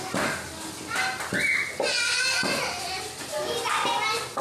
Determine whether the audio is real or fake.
real